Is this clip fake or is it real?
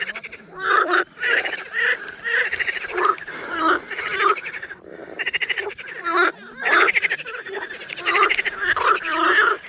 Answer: fake